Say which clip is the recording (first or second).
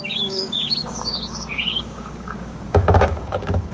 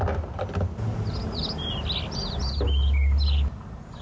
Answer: second